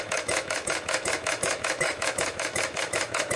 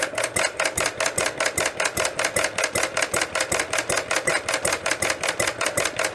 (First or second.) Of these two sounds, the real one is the second